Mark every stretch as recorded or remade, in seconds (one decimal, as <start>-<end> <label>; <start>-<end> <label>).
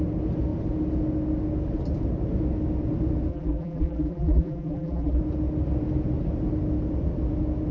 0.0-3.3 recorded; 3.3-5.2 remade; 5.2-7.7 recorded